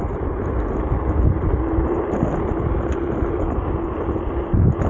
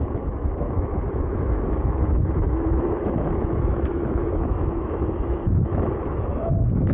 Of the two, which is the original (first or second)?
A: first